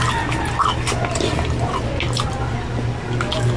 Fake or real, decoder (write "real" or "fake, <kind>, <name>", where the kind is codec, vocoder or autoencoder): real